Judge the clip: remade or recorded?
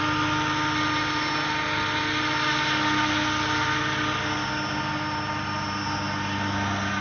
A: recorded